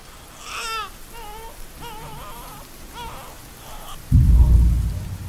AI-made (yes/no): no